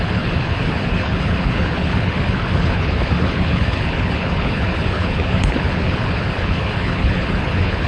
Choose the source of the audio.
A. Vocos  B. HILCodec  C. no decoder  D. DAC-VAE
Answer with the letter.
B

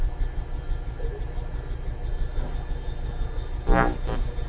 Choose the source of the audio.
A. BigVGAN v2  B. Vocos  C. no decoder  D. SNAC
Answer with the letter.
C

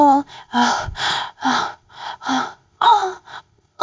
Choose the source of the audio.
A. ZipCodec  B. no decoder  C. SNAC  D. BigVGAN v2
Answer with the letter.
A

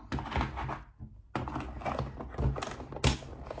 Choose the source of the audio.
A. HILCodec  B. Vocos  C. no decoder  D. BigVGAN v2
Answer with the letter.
C